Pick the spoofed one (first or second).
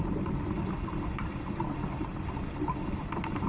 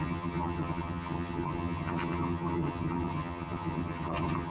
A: second